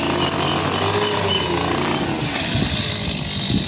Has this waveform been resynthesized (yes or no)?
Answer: no